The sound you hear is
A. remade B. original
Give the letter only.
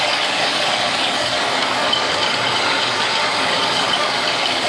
A